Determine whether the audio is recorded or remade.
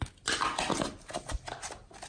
recorded